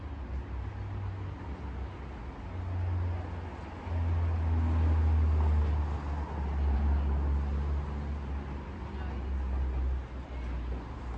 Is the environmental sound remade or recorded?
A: recorded